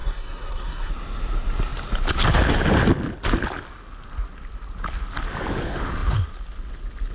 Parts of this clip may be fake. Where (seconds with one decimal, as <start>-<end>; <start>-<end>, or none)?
0.0-0.9